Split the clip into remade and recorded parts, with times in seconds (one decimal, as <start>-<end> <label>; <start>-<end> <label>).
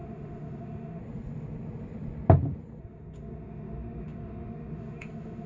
0.0-1.0 remade; 1.0-2.8 recorded; 2.8-5.5 remade